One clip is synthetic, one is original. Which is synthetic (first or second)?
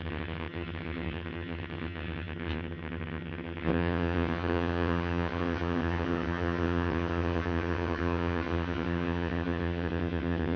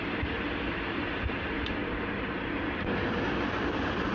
first